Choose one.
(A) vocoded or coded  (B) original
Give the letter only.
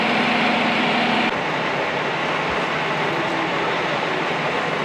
B